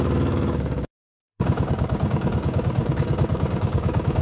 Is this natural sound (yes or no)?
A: no